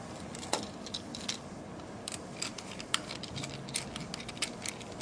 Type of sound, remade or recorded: recorded